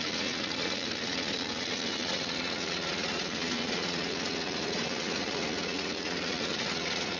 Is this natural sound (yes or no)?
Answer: no